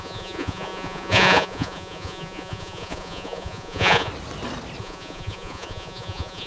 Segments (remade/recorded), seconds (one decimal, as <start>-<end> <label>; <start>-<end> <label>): 0.0-4.1 remade; 4.1-4.8 recorded; 4.8-6.5 remade